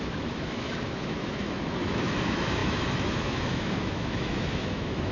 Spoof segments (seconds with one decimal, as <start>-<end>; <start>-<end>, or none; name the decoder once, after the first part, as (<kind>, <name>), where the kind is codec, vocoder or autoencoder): 0.0-5.1 (autoencoder, DAC-VAE)